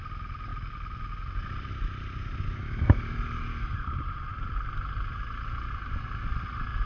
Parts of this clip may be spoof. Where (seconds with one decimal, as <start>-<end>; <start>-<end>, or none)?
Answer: none